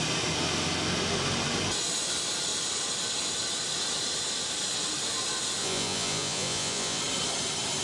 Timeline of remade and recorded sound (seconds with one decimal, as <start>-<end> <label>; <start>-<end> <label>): 0.0-5.6 recorded; 5.6-7.0 remade; 7.0-7.8 recorded